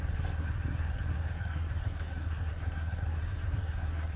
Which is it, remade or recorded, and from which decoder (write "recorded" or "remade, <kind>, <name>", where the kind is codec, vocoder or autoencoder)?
remade, codec, SNAC